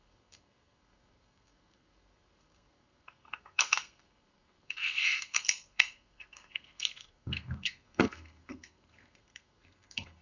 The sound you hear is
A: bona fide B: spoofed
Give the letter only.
B